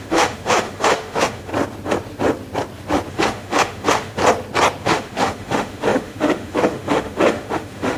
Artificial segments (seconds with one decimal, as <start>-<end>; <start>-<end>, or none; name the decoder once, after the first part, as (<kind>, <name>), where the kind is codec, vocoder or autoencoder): 0.0-1.5 (autoencoder, DAC-VAE); 3.1-4.2; 4.8-8.0